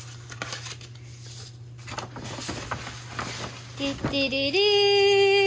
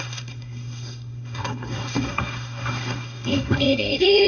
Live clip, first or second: first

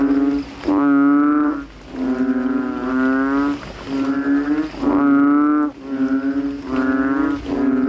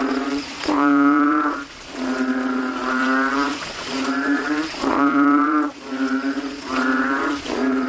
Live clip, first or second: first